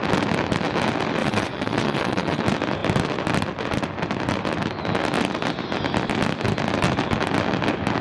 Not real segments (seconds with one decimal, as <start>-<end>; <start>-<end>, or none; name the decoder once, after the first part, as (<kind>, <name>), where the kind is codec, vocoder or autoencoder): 1.2-2.4 (vocoder, WaveNeXt)